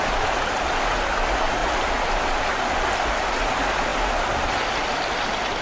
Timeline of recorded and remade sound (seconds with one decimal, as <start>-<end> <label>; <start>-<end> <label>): 0.0-5.6 recorded